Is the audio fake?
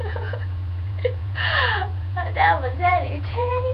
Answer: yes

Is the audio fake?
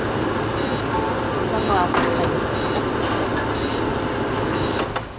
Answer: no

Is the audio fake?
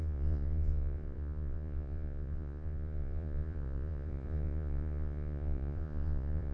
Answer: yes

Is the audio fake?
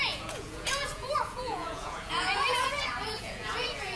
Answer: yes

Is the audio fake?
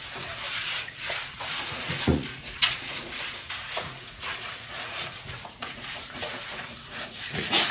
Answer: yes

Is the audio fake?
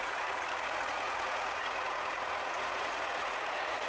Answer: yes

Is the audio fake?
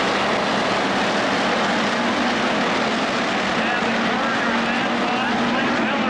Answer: no